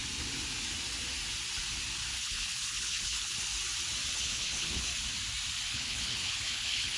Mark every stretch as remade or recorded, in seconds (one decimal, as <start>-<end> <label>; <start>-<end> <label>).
0.0-2.1 recorded; 2.1-3.5 remade; 3.5-4.1 recorded; 4.1-4.9 remade; 4.9-5.7 recorded; 5.7-7.0 remade